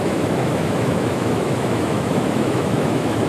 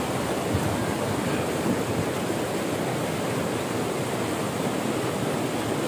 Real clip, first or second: second